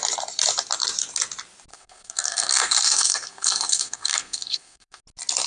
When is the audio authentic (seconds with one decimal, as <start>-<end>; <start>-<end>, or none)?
0.0-1.7; 5.0-5.5